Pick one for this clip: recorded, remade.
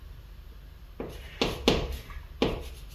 recorded